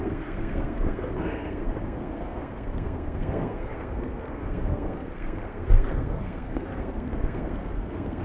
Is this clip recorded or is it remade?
remade